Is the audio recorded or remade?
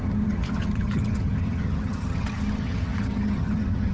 remade